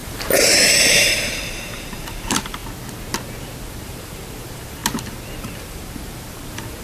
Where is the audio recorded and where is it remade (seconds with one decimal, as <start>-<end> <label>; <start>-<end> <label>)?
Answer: 0.0-2.6 remade; 2.6-3.7 recorded; 3.7-4.8 remade; 4.8-5.4 recorded; 5.4-6.8 remade